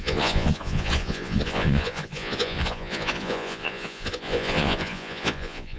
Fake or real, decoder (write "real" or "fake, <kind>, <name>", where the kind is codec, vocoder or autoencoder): fake, vocoder, Vocos